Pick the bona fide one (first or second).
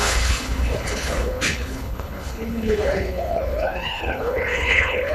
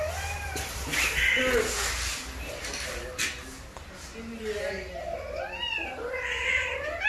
second